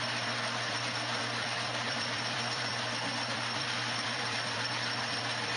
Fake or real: fake